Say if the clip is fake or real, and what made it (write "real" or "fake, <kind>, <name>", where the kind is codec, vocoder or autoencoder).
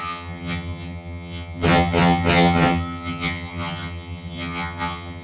fake, vocoder, HiFi-GAN